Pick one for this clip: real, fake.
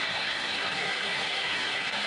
fake